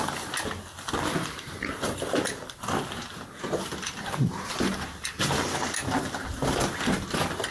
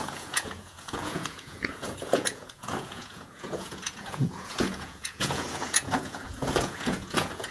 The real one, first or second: first